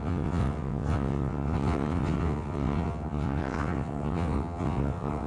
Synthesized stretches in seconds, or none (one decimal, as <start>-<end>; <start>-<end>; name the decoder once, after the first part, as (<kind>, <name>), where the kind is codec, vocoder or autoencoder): 0.0-5.3 (vocoder, WaveNeXt)